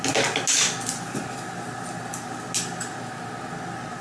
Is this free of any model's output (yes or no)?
yes